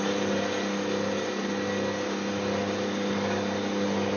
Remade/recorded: recorded